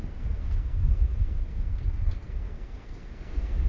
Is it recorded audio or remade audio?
remade